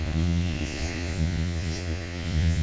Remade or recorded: remade